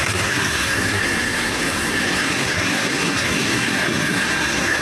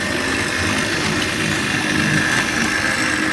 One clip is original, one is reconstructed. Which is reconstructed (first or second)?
first